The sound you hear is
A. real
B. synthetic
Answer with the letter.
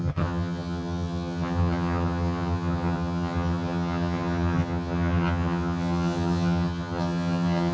B